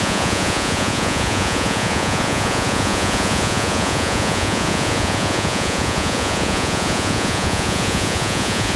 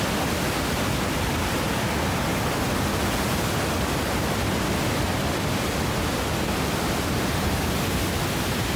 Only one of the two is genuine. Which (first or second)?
second